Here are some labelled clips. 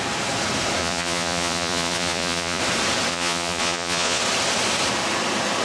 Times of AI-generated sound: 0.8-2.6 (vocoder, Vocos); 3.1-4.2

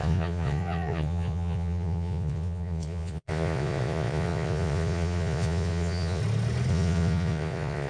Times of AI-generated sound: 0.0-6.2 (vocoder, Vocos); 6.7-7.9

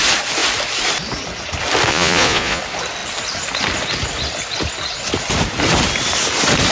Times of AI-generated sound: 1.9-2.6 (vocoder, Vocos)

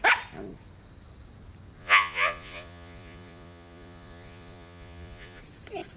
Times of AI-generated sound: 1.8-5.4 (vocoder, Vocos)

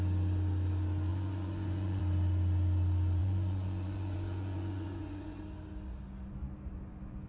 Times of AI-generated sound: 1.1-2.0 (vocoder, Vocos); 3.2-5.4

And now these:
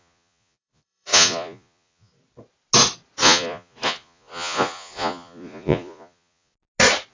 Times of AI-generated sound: 0.0-2.1 (vocoder, Vocos); 3.2-6.5

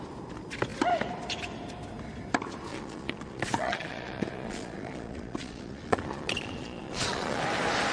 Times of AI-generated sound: 2.7-7.4 (vocoder, Vocos)

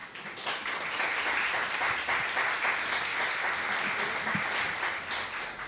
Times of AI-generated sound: none